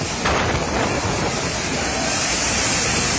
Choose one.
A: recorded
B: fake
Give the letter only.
B